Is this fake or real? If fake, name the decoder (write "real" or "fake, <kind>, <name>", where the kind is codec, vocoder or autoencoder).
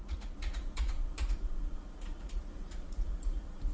fake, vocoder, Vocos